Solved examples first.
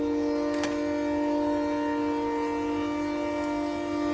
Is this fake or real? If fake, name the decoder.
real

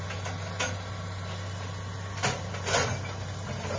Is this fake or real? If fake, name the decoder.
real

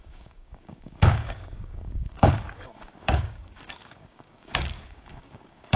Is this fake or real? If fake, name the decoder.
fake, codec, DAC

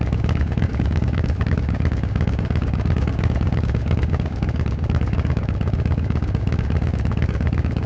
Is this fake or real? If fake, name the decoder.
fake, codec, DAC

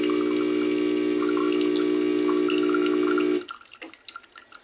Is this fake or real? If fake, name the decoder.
real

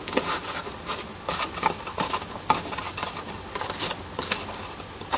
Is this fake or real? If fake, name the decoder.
real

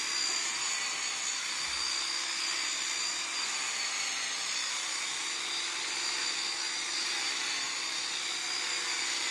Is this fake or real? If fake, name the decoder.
real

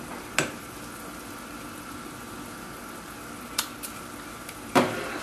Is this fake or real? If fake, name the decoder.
real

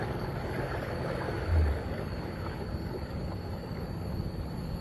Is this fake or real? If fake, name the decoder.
fake, codec, DAC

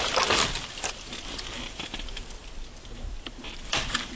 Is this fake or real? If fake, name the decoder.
real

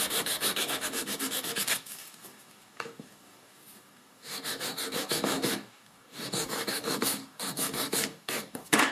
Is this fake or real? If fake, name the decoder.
fake, codec, DAC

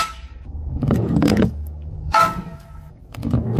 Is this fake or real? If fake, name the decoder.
fake, codec, DAC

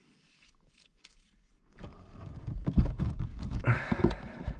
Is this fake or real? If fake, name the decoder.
fake, codec, DAC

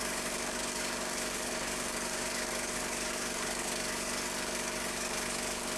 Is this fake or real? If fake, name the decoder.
fake, codec, DAC